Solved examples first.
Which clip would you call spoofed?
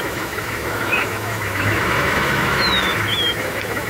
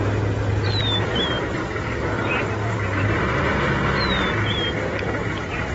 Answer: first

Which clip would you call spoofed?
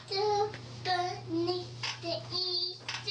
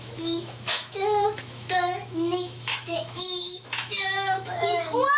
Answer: second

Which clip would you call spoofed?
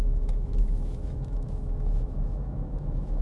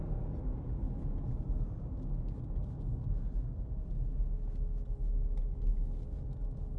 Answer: first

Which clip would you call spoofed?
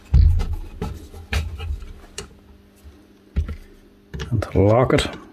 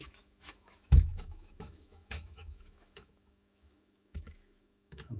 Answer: second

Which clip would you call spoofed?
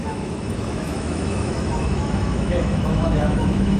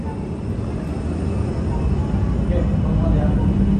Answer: first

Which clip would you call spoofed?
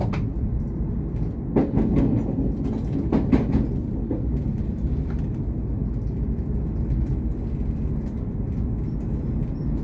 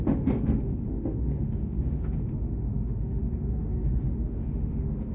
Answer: second